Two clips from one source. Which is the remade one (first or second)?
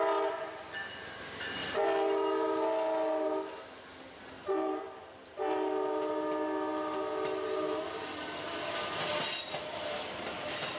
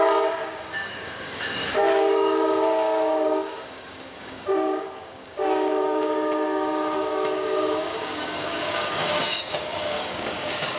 second